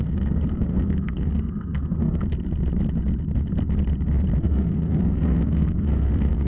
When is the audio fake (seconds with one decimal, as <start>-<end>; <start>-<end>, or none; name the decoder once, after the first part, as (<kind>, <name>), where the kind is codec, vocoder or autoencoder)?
0.0-2.2 (codec, SNAC); 4.4-6.5